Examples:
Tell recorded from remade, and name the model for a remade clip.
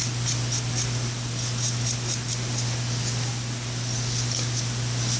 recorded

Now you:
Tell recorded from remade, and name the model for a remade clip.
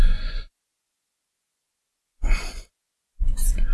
remade, vocoder, Vocos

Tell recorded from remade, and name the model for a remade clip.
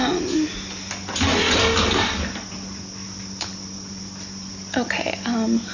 recorded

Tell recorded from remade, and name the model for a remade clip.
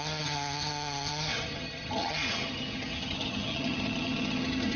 remade, vocoder, HiFi-GAN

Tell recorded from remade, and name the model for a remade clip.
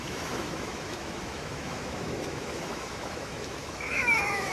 remade, autoencoder, DAC-VAE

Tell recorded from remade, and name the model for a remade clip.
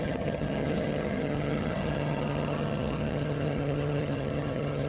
remade, vocoder, HiFi-GAN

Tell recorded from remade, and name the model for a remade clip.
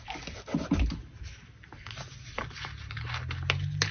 recorded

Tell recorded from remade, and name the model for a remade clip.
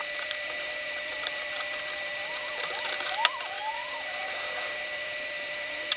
remade, vocoder, BigVGAN v2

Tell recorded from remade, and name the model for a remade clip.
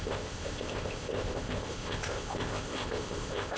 remade, codec, ZipCodec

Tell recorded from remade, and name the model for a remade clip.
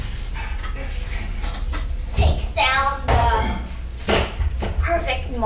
recorded